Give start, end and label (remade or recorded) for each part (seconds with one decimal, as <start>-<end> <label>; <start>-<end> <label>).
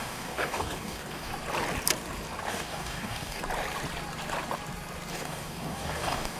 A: 0.0-1.3 remade; 1.3-2.5 recorded; 2.5-3.4 remade; 3.4-5.1 recorded; 5.1-6.4 remade